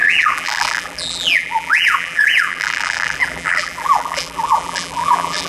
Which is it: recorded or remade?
remade